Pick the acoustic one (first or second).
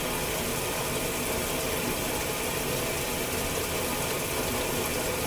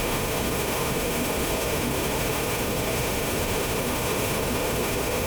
first